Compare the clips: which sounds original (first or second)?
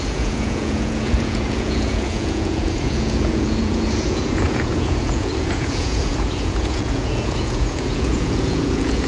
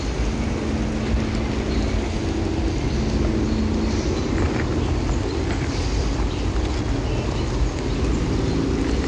second